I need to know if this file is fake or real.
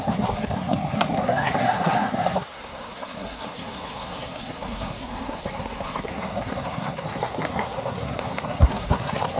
fake